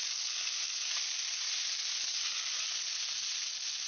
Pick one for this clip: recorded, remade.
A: recorded